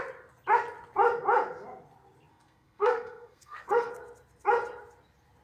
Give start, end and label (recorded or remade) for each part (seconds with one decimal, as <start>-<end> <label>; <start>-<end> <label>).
0.0-2.3 recorded; 2.3-3.9 remade; 3.9-5.4 recorded